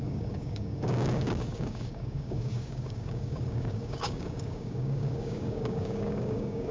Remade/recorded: remade